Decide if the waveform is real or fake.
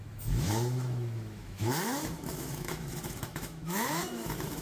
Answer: fake